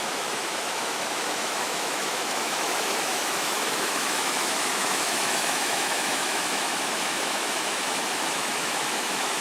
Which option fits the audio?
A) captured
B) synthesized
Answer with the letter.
B